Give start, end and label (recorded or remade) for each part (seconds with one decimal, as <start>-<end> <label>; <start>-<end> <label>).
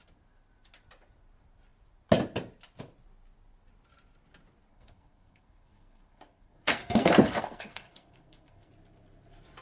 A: 0.0-4.7 recorded; 4.7-8.7 remade; 8.7-9.6 recorded